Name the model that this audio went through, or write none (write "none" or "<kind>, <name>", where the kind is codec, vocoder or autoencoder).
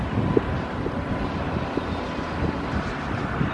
none